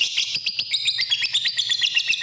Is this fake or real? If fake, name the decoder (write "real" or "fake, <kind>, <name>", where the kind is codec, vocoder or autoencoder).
real